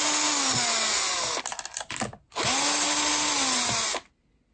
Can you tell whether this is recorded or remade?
recorded